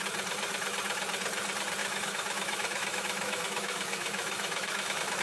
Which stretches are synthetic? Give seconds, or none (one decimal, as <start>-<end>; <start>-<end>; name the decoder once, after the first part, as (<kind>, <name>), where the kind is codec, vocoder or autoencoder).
1.8-5.2 (autoencoder, DAC-VAE)